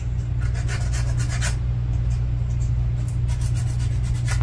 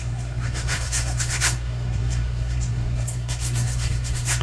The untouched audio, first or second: first